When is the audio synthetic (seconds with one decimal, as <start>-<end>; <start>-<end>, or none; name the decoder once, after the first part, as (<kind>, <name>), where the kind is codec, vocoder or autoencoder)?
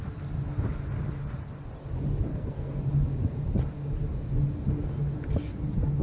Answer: 2.3-2.8 (codec, SNAC)